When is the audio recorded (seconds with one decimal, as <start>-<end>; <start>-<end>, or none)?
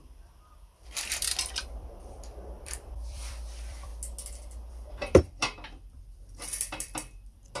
3.9-4.7